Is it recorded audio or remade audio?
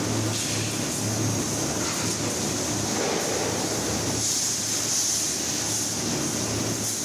recorded